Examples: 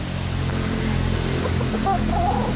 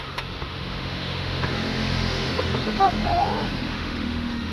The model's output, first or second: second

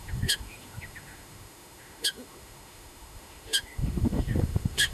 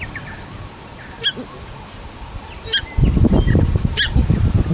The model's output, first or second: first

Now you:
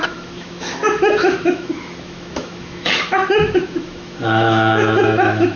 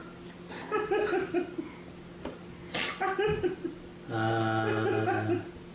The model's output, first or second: first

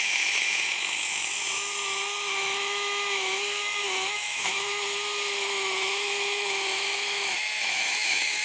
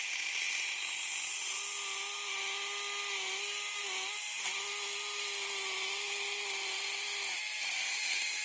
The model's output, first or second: first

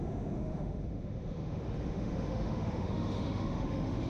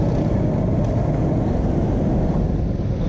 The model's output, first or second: first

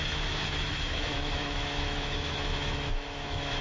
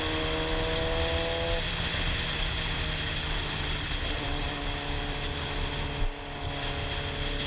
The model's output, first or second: first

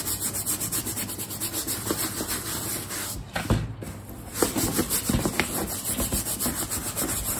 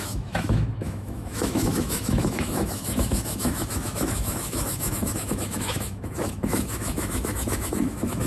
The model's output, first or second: second